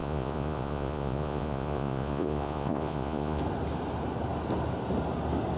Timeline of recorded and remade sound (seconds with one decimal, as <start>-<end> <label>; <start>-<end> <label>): 0.0-3.4 remade; 3.4-5.6 recorded